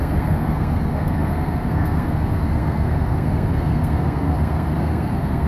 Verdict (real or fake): fake